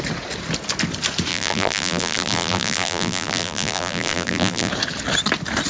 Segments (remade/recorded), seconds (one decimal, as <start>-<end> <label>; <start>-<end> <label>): 0.0-1.3 recorded; 1.3-4.7 remade; 4.7-5.7 recorded